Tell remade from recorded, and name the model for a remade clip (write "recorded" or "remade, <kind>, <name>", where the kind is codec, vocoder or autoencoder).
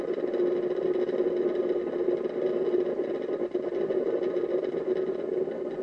recorded